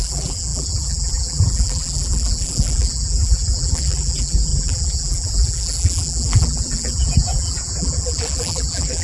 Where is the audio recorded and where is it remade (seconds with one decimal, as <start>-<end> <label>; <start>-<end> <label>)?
0.0-9.0 remade